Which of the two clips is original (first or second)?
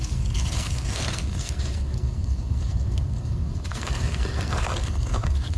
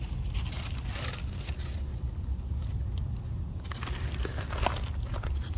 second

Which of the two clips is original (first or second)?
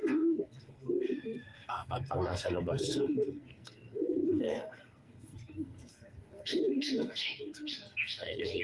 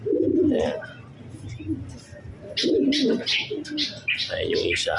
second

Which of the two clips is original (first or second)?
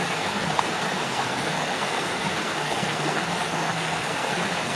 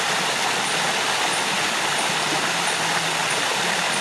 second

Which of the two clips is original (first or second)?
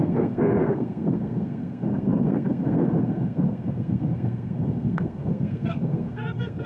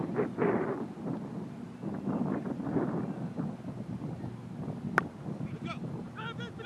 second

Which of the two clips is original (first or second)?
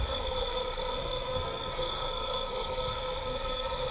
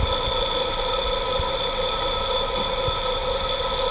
second